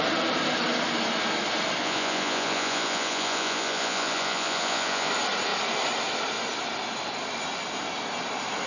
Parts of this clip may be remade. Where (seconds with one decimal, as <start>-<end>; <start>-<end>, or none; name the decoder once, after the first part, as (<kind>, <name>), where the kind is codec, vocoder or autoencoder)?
1.8-5.1 (vocoder, Vocos)